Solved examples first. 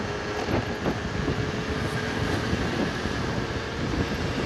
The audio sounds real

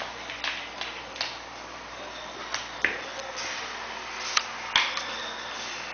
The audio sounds real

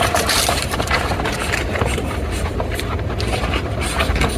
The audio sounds real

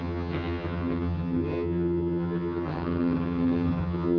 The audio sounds fake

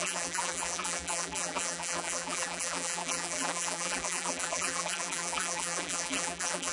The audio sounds fake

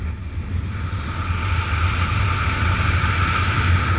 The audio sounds real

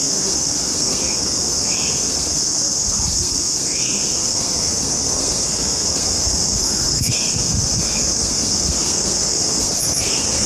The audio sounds fake